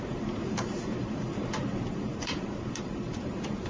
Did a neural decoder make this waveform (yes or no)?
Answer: yes